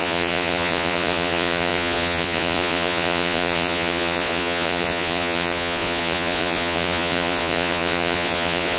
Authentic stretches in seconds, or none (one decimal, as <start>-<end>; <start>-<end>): none